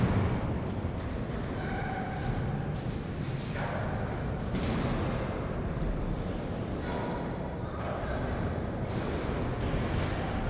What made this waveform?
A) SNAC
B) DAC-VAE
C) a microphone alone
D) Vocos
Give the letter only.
C